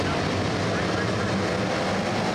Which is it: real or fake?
real